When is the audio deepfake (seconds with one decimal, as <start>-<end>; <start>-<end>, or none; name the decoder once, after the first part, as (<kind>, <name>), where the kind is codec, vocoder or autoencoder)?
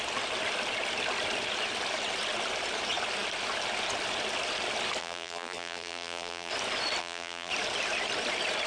5.0-6.5 (vocoder, BigVGAN v2); 7.0-7.5